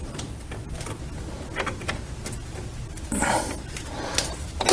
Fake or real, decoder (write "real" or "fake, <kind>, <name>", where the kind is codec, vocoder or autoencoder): real